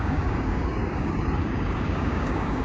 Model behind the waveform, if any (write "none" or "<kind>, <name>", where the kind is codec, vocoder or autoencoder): codec, DAC